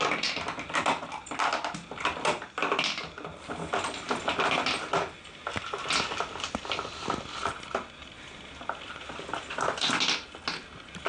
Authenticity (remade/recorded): recorded